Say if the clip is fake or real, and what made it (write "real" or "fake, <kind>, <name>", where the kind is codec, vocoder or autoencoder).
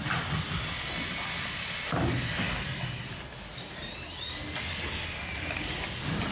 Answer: real